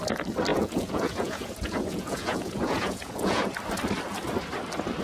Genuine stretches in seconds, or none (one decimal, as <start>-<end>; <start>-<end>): 0.0-0.5; 3.5-5.0